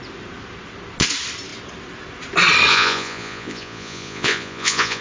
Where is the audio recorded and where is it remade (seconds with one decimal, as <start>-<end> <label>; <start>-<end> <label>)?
0.0-2.7 recorded; 2.7-5.0 remade